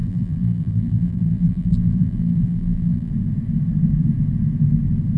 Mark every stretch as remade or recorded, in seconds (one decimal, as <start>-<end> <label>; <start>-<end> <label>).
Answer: 0.0-3.1 remade; 3.1-5.2 recorded